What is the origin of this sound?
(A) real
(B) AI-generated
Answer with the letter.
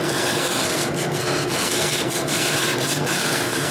B